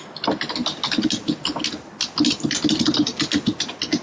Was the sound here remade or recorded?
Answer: recorded